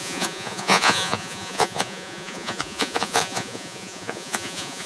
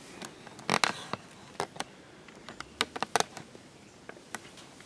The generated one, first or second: first